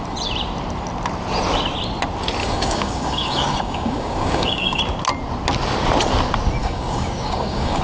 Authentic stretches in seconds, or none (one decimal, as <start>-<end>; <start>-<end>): 0.0-2.4; 4.8-6.6